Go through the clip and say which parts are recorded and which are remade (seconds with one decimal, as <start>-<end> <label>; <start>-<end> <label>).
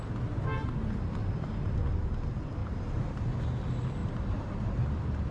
0.0-1.2 recorded; 1.2-1.8 remade; 1.8-2.6 recorded; 2.6-3.4 remade; 3.4-4.0 recorded; 4.0-4.8 remade; 4.8-5.3 recorded